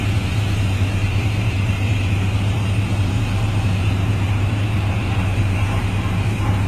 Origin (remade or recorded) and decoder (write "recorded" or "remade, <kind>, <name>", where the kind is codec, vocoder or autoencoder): remade, vocoder, BigVGAN v2